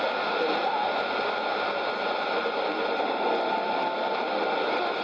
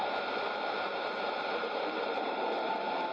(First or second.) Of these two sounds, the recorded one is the first